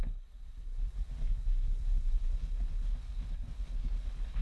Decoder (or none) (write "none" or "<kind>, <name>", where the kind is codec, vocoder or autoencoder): codec, HILCodec